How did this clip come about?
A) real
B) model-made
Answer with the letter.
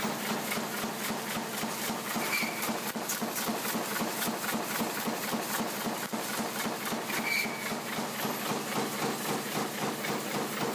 A